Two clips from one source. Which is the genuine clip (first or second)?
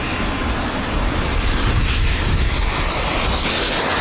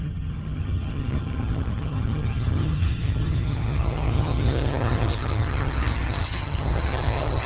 first